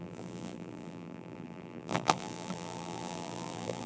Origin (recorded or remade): remade